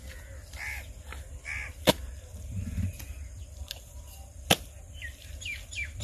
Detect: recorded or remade recorded